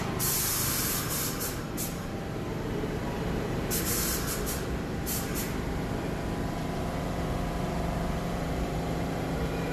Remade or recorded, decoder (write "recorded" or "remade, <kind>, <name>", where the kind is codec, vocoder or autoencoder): remade, vocoder, BigVGAN v2